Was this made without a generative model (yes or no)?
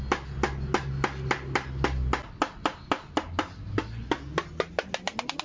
yes